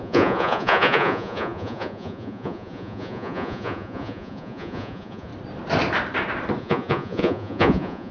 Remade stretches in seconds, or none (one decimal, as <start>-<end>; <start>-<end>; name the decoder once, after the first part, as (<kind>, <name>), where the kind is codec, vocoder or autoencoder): 0.0-5.3 (vocoder, Vocos); 6.6-8.1